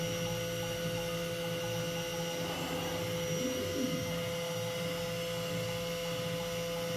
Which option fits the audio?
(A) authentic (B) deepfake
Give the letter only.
A